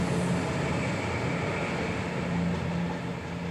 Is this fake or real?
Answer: real